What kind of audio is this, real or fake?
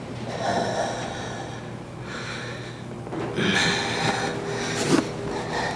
real